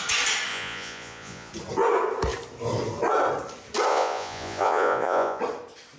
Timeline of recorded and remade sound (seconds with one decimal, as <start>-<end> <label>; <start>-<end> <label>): 0.0-0.5 recorded; 0.5-1.5 remade; 1.5-3.9 recorded; 3.9-5.4 remade; 5.4-6.0 recorded